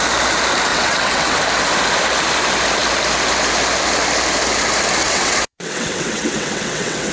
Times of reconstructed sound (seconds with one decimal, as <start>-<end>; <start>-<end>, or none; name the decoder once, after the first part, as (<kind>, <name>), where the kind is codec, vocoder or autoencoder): 0.7-1.4 (vocoder, WaveNeXt); 5.0-7.1